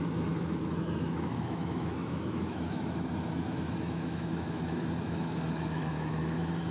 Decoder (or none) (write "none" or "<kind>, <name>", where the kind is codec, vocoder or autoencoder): autoencoder, DAC-VAE